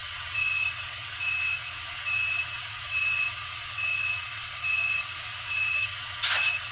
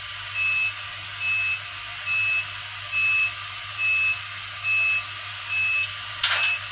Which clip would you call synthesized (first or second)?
first